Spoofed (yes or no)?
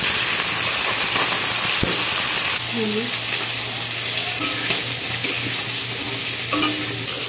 no